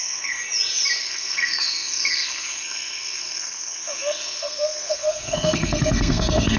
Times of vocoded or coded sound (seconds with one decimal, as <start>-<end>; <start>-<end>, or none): 0.0-0.4; 1.0-6.6